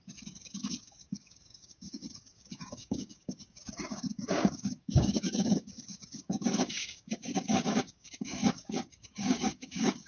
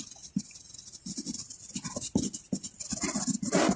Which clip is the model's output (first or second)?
first